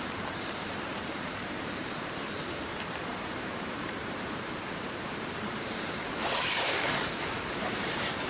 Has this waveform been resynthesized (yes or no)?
yes